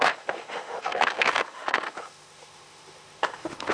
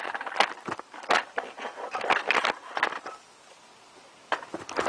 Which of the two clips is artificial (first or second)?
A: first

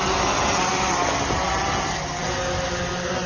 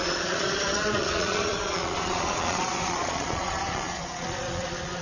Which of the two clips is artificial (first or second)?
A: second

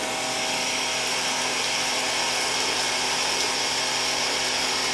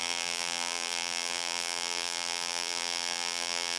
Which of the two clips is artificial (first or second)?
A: second